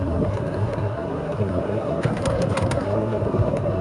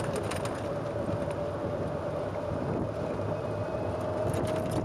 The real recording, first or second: second